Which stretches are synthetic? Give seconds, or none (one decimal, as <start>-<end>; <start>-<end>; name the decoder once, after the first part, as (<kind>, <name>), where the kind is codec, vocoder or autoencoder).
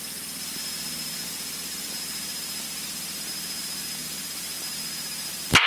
none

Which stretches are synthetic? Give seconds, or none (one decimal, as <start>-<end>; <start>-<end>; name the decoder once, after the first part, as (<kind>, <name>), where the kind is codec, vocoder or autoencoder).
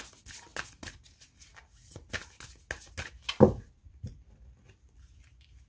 none